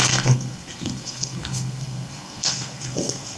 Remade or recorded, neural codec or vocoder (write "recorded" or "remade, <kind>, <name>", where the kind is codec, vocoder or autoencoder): remade, codec, SNAC